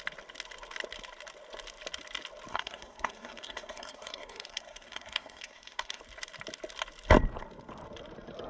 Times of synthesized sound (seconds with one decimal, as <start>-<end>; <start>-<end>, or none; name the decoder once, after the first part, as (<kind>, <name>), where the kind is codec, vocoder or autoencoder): 2.5-6.0 (codec, SNAC)

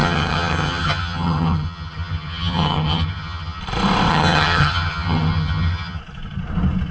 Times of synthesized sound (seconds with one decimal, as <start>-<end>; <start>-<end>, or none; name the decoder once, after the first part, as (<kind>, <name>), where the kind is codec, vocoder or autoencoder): 0.0-3.6 (vocoder, HiFi-GAN); 4.1-6.0